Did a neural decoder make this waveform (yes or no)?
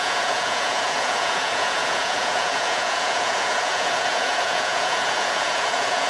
yes